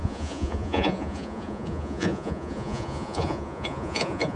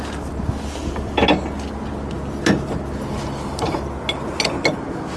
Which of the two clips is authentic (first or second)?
second